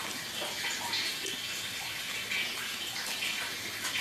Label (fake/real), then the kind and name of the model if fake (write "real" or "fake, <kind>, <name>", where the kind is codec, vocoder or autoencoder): real